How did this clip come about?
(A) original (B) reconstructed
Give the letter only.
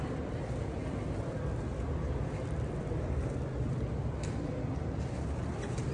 A